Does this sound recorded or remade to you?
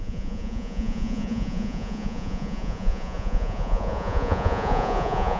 remade